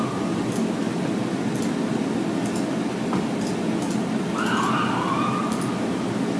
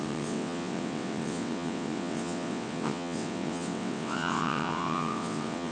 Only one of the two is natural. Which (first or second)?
first